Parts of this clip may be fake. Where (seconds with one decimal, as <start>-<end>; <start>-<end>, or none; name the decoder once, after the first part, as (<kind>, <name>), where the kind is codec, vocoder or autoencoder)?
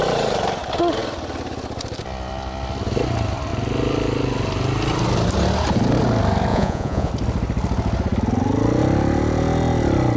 6.5-7.1 (vocoder, Vocos)